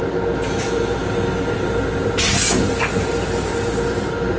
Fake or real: real